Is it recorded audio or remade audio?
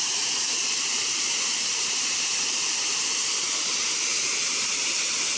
remade